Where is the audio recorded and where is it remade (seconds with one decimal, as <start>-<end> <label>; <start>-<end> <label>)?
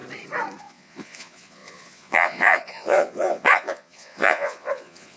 0.0-0.6 recorded; 0.6-5.2 remade